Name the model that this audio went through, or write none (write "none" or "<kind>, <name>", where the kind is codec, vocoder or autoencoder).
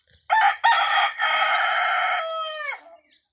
none